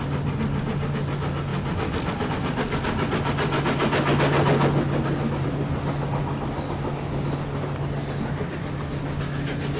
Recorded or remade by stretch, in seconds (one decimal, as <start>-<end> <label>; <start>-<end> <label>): 0.0-9.8 recorded